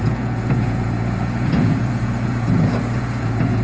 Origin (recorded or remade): remade